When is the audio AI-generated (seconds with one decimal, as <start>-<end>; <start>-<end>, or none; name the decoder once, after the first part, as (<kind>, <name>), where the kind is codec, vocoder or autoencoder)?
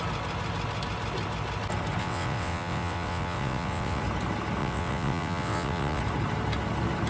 2.0-4.0 (vocoder, WaveNeXt); 4.6-6.0